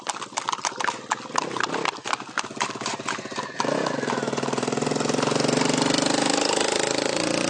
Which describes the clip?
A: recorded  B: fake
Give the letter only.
A